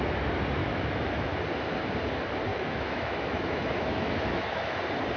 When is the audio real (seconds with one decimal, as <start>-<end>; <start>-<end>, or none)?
0.0-0.6; 1.4-2.5; 4.8-5.2